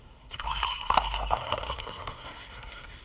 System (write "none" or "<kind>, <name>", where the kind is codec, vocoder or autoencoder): codec, SNAC